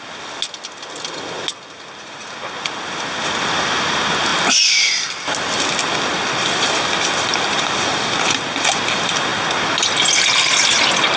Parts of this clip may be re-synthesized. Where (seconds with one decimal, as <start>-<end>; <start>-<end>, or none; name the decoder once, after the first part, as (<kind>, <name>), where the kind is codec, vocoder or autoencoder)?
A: none